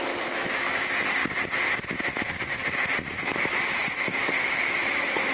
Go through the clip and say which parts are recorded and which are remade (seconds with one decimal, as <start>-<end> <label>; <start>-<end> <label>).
0.0-1.2 remade; 1.2-1.7 recorded; 1.7-5.3 remade